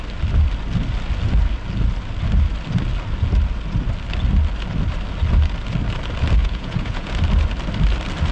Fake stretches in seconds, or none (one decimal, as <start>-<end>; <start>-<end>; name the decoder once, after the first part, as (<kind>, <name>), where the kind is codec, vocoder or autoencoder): 6.4-7.1 (vocoder, Vocos)